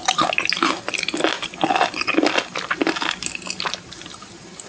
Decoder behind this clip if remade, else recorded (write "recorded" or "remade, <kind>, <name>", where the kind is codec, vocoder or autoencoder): recorded